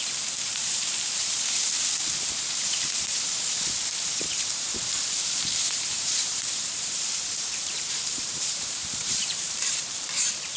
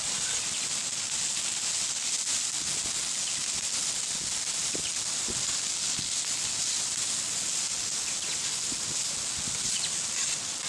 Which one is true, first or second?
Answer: second